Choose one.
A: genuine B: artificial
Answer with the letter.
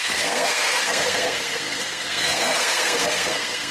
B